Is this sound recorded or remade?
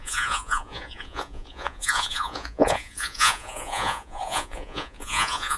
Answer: remade